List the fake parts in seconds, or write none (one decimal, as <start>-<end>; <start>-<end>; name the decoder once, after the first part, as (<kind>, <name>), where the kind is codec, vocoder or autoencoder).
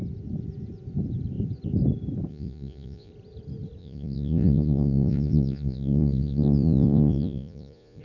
2.3-3.1 (vocoder, Vocos); 3.8-8.0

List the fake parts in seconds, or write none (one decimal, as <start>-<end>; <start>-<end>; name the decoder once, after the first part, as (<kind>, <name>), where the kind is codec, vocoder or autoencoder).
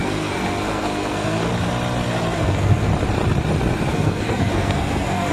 0.0-1.5 (codec, SNAC); 2.4-2.9; 3.9-5.3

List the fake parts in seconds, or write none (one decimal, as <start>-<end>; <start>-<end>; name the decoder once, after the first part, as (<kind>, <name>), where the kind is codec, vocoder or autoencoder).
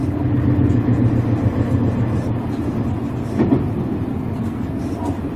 4.1-4.8 (codec, SNAC)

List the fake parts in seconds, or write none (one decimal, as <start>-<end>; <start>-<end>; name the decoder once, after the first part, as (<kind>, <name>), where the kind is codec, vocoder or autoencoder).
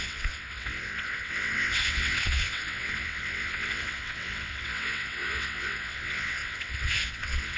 0.0-7.6 (vocoder, WaveNeXt)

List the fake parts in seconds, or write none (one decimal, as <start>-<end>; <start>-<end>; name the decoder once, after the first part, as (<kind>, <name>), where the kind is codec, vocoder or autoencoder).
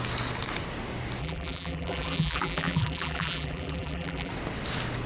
1.2-4.3 (vocoder, BigVGAN v2)